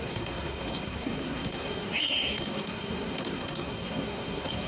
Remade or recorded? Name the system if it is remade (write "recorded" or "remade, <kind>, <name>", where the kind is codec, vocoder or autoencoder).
remade, codec, SNAC